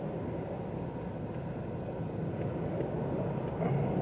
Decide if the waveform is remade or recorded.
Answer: recorded